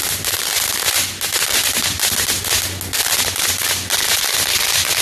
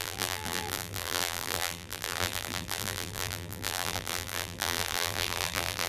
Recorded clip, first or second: first